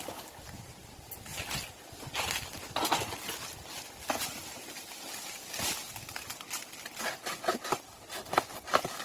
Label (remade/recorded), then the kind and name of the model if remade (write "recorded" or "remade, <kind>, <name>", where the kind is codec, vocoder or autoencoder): recorded